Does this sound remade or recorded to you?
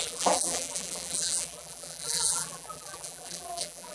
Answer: remade